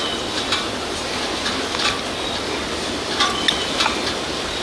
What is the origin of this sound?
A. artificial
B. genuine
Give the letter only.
B